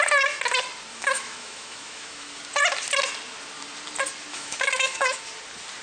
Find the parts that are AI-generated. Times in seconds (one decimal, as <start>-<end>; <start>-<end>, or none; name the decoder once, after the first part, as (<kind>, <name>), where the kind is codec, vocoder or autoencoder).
0.9-2.4 (autoencoder, DAC-VAE); 4.3-5.2